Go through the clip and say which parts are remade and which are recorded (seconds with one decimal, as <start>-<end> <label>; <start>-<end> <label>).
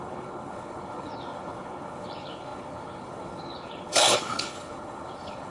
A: 0.0-5.5 remade